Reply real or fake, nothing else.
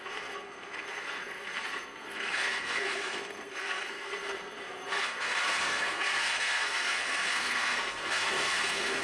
fake